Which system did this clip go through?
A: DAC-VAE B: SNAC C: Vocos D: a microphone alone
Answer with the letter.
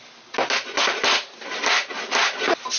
D